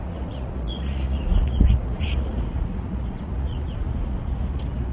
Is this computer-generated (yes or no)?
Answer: yes